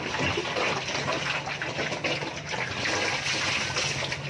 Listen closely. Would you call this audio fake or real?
real